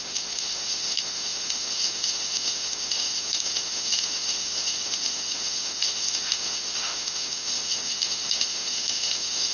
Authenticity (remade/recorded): remade